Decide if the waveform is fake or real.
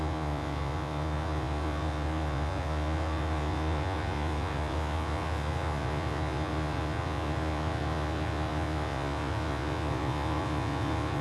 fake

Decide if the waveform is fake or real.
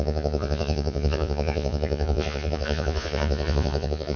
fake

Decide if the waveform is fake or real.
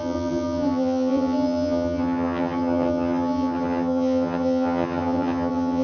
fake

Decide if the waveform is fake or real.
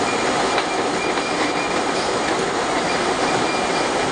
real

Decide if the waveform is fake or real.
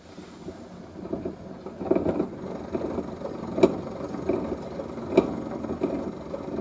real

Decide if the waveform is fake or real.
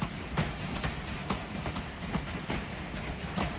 real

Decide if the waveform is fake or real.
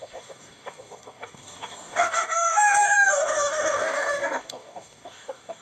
fake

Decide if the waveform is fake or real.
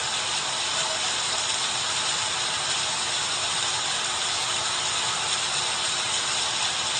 fake